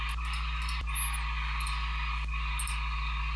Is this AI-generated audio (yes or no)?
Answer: no